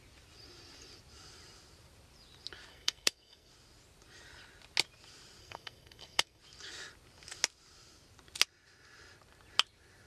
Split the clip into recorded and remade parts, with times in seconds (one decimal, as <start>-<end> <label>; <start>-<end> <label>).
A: 0.0-2.7 recorded; 2.7-3.5 remade; 3.5-5.4 recorded; 5.4-6.4 remade; 6.4-10.1 recorded

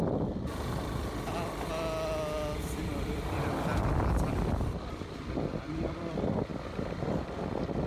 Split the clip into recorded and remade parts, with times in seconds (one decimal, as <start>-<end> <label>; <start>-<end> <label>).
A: 0.0-2.9 recorded; 2.9-4.9 remade; 4.9-6.5 recorded; 6.5-7.4 remade; 7.4-7.9 recorded

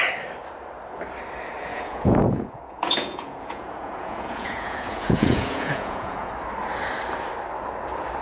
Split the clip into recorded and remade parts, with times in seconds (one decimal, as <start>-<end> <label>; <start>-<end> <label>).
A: 0.0-1.7 recorded; 1.7-6.3 remade; 6.3-8.2 recorded

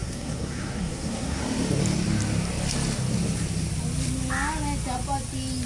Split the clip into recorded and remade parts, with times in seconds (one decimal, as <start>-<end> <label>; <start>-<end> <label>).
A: 0.0-1.4 remade; 1.4-5.7 recorded

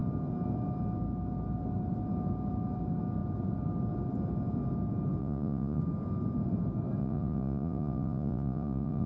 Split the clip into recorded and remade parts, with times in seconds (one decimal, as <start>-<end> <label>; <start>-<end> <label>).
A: 0.0-5.2 recorded; 5.2-5.8 remade; 5.8-7.0 recorded; 7.0-9.1 remade

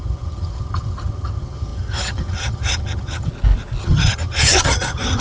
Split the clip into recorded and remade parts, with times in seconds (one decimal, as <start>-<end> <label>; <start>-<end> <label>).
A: 0.0-3.3 remade; 3.3-3.8 recorded; 3.8-5.2 remade